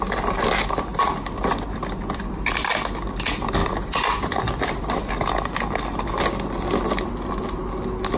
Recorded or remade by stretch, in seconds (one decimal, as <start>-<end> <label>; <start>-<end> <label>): 0.0-0.9 recorded; 0.9-2.7 remade; 2.7-3.6 recorded; 3.6-4.9 remade; 4.9-8.2 recorded